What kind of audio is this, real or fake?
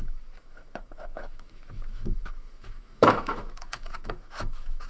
fake